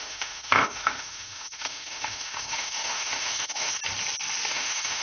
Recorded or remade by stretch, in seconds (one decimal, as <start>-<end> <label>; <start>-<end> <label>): 0.0-3.8 remade; 3.8-4.5 recorded; 4.5-5.0 remade